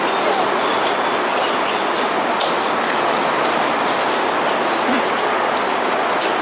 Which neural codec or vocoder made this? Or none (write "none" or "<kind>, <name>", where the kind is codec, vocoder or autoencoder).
none